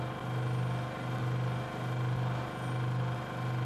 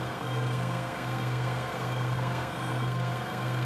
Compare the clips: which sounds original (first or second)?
first